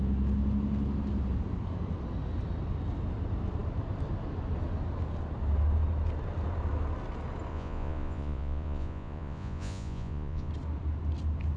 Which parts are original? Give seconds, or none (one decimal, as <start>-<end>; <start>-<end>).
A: 0.0-7.5; 10.5-11.6